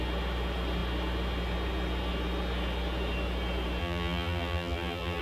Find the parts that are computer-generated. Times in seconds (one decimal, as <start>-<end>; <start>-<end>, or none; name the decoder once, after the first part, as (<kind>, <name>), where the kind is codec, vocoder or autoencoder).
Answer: 3.8-5.2 (vocoder, BigVGAN v2)